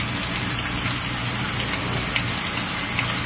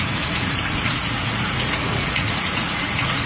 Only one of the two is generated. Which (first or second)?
second